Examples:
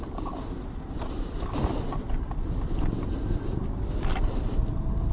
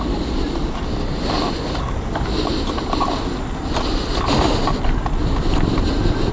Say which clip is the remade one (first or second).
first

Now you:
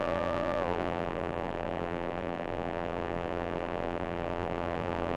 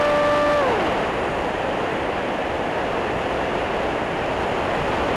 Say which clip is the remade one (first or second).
first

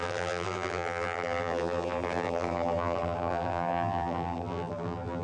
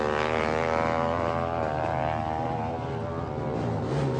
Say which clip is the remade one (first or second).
first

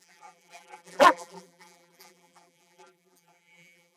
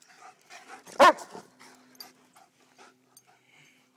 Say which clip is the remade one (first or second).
first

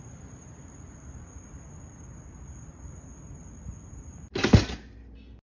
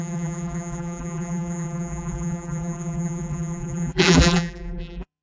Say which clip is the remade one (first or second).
second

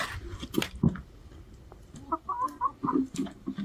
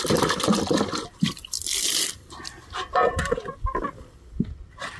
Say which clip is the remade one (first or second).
second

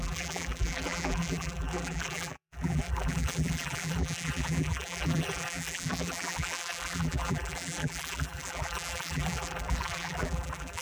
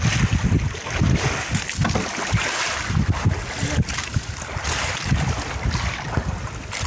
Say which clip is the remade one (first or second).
first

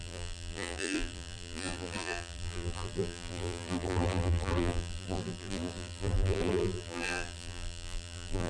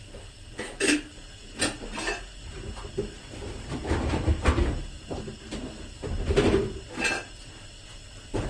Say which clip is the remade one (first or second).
first